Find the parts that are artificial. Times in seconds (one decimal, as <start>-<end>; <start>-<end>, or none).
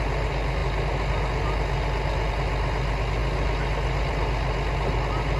none